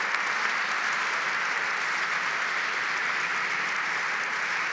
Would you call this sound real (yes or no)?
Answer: yes